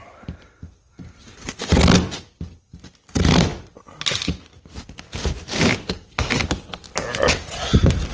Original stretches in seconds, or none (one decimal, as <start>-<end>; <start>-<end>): 0.0-8.1